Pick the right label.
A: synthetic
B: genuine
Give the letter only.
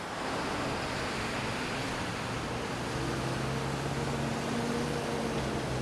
B